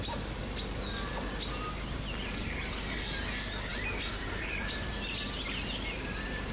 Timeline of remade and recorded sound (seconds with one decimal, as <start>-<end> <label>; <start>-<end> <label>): 0.0-6.5 recorded